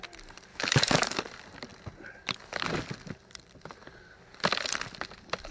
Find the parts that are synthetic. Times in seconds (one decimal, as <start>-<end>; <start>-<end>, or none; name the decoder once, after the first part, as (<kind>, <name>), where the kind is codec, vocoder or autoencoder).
0.5-1.2 (autoencoder, DAC-VAE)